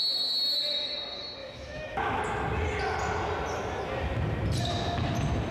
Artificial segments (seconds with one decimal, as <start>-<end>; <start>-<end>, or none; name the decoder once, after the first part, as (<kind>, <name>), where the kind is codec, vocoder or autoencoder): 1.4-2.2 (autoencoder, DAC-VAE)